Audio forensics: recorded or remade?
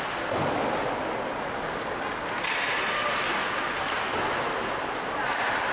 recorded